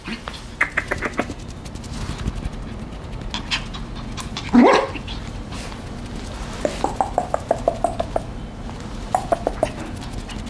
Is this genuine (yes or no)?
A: yes